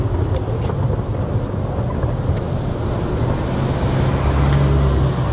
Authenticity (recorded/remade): recorded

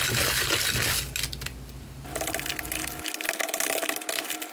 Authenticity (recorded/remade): recorded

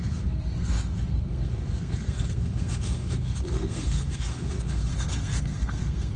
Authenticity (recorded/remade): remade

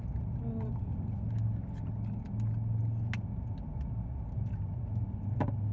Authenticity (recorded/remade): recorded